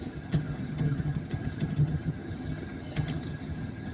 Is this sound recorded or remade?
remade